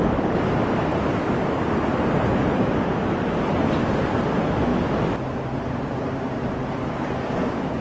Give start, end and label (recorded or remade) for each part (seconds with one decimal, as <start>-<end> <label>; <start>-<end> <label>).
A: 0.0-7.8 recorded